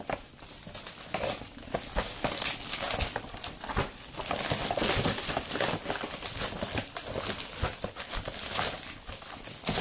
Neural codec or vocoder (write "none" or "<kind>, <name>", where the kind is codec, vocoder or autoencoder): none